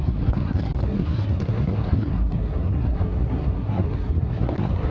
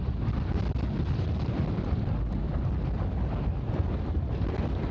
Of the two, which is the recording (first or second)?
second